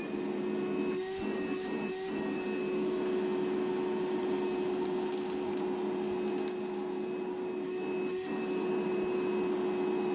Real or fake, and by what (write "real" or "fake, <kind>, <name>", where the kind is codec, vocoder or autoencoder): real